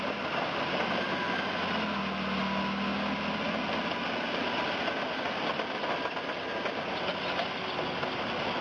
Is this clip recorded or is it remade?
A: recorded